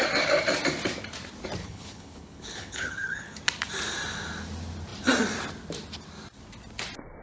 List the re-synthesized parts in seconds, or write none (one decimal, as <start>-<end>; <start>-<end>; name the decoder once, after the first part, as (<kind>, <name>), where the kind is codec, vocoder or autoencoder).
1.6-3.4 (codec, HILCodec)